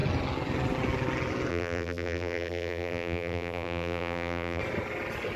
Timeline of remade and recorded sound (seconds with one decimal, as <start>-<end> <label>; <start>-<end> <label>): 0.0-1.5 recorded; 1.5-4.6 remade; 4.6-5.4 recorded